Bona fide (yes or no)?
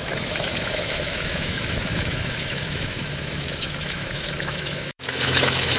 no